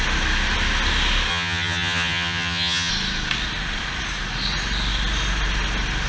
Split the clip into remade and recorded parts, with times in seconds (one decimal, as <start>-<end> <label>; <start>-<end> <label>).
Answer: 0.0-1.3 recorded; 1.3-2.9 remade; 2.9-6.1 recorded